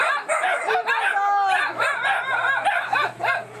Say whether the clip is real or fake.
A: real